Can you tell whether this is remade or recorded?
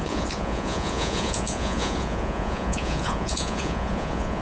remade